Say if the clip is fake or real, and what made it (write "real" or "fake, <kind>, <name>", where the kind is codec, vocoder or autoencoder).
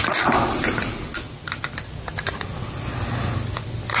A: real